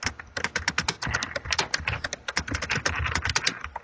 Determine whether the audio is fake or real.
real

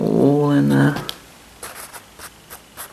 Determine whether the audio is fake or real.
real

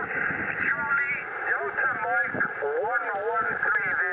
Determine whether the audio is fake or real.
real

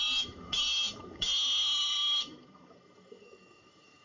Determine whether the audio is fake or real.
fake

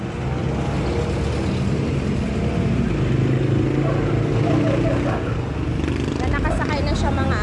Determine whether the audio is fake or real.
real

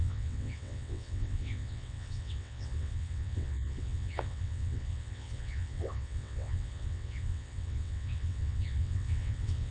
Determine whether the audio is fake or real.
fake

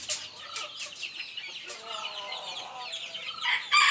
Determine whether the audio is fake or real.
real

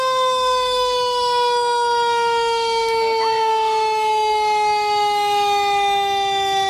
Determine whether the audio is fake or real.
fake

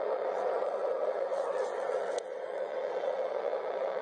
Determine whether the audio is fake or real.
fake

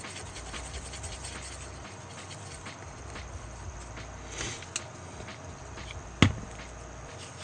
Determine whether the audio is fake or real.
real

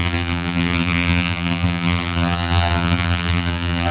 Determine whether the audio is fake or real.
fake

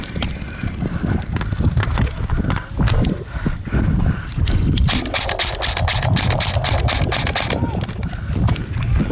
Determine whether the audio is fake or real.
real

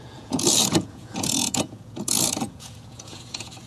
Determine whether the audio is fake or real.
fake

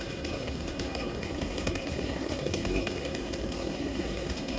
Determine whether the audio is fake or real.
fake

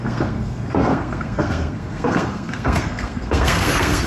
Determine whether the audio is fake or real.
fake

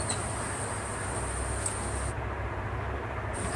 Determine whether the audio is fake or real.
real